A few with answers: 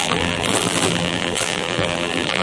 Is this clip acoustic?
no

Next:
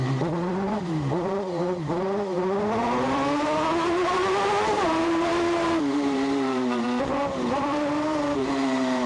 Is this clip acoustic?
no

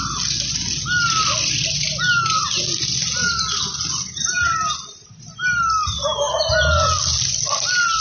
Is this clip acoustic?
yes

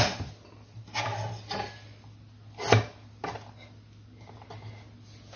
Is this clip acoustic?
yes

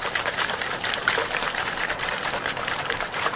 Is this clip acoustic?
no